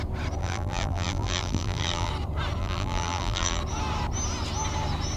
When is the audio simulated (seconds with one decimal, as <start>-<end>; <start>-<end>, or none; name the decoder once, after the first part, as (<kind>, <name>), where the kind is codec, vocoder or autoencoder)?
0.4-2.1 (vocoder, BigVGAN v2); 2.6-3.6